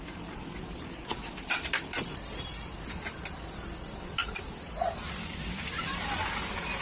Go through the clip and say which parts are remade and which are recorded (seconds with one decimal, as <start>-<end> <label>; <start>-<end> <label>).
0.0-6.8 recorded